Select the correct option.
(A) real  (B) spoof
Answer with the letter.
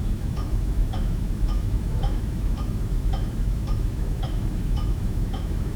B